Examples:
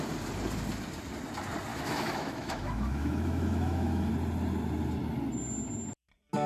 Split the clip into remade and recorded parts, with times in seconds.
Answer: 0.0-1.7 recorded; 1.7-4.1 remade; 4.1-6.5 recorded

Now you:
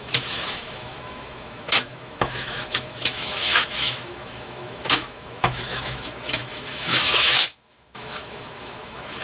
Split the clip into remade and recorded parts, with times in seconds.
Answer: 0.0-9.2 remade

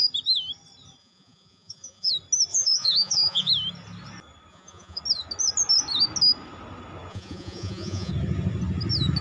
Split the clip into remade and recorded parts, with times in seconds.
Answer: 0.0-1.0 recorded; 1.0-2.1 remade; 2.1-2.5 recorded; 2.5-3.5 remade; 3.5-4.5 recorded; 4.5-5.0 remade; 5.0-7.1 recorded; 7.1-8.1 remade; 8.1-9.2 recorded

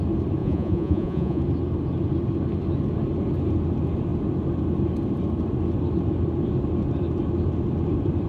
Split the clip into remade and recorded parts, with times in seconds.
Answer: 0.0-0.4 recorded; 0.4-1.4 remade; 1.4-8.3 recorded

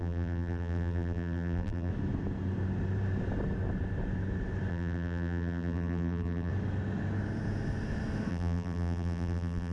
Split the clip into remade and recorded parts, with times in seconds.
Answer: 0.0-1.9 remade; 1.9-4.7 recorded; 4.7-6.5 remade; 6.5-8.3 recorded; 8.3-9.7 remade